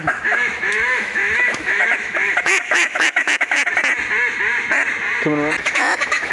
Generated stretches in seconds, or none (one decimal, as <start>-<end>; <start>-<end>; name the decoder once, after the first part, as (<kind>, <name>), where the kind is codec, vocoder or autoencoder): 0.0-3.6 (autoencoder, DAC-VAE); 5.6-6.3